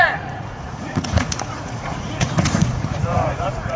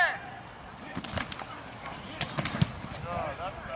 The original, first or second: second